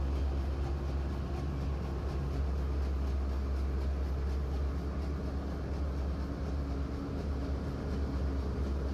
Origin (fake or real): real